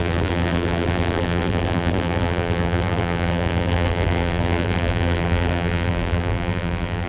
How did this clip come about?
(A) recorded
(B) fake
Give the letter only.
B